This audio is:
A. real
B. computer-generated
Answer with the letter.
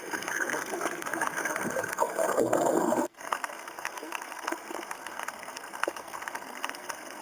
B